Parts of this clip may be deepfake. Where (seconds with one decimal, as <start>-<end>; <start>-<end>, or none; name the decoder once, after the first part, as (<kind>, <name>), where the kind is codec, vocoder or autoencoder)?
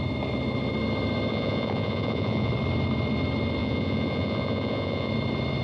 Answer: 1.3-2.5 (vocoder, Vocos); 3.6-5.1